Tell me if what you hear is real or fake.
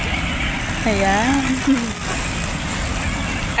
real